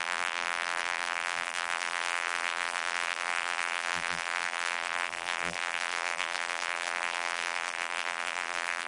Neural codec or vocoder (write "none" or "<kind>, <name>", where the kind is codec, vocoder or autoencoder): vocoder, BigVGAN v2